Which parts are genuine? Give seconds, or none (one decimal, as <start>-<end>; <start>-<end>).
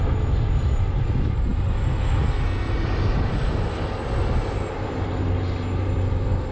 0.0-6.5